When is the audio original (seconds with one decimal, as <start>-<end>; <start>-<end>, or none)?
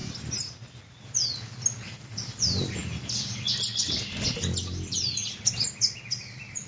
0.0-2.0; 2.8-5.5